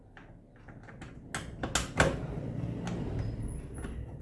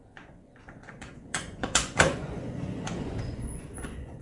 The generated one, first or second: second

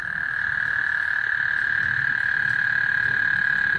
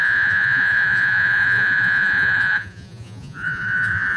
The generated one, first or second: second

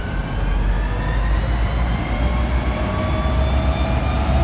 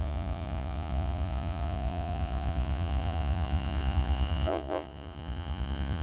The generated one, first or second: second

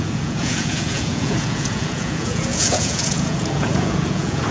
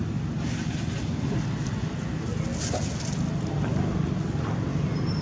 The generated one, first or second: first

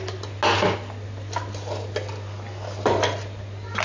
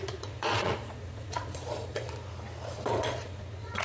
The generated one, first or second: second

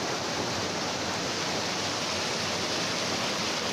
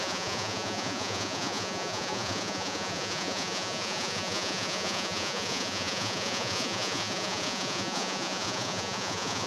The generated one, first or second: second